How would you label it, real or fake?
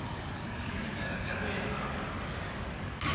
fake